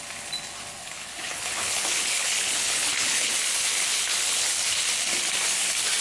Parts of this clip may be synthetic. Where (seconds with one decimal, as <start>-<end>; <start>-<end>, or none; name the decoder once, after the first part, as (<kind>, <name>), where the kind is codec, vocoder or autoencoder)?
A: 0.8-3.3 (codec, HILCodec); 3.9-4.5